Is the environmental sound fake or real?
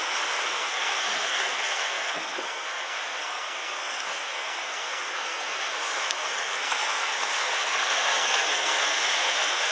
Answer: fake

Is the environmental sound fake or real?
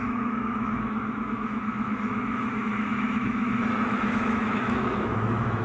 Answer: fake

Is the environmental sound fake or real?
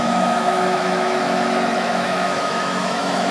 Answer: fake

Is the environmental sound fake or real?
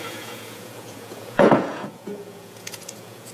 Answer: fake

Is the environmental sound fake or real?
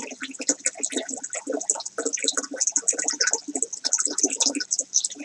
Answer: real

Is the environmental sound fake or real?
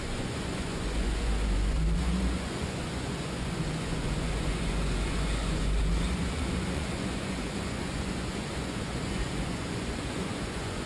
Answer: fake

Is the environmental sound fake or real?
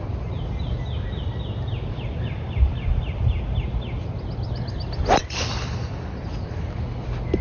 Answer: real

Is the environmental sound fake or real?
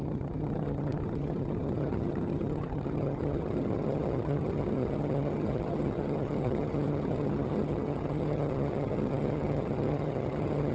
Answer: fake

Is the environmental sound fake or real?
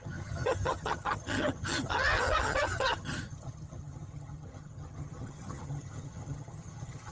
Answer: fake